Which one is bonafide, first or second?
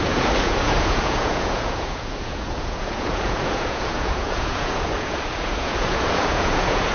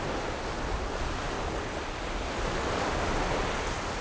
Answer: second